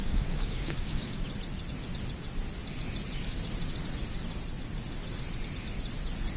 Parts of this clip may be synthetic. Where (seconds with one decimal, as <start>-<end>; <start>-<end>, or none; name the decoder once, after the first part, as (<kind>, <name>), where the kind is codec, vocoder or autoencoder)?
0.0-1.3 (codec, DAC)